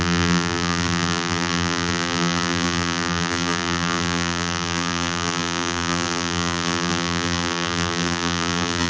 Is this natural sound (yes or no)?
no